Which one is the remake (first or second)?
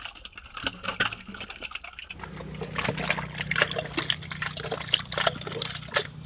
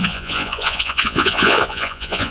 second